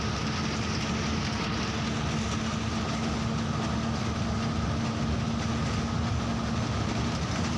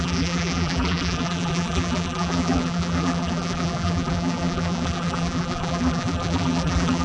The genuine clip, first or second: first